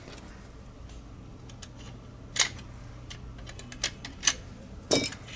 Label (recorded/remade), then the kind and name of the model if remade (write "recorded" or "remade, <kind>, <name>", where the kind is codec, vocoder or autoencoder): recorded